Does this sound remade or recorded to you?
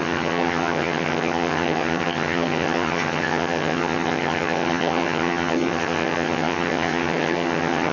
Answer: remade